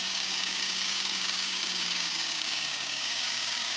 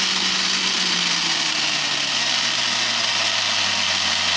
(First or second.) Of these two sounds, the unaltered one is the second